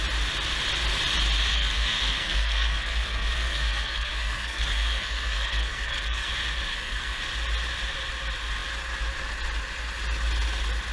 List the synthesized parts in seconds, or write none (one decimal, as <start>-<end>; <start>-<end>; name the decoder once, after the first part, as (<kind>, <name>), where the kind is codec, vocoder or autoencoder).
1.5-6.3 (codec, SNAC); 6.7-7.2